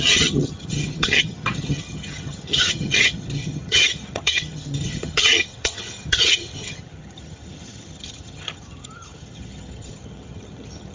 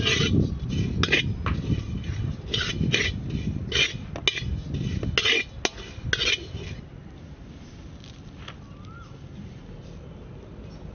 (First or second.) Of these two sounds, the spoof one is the first